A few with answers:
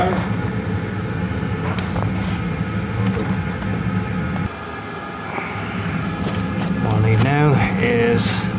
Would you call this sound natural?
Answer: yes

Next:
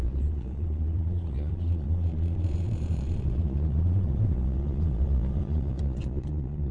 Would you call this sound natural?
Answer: no